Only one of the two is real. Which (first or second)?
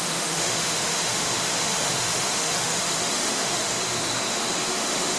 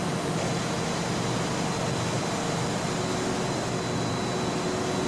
second